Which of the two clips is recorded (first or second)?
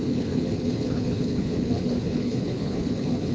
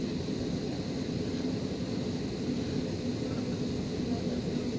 second